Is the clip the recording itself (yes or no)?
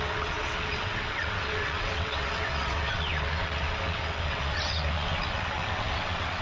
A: no